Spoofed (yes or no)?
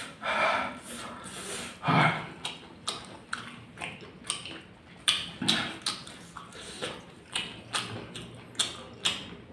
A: no